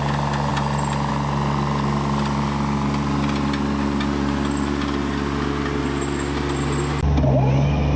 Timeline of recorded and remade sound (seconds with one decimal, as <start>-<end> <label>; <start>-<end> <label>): 0.0-8.0 recorded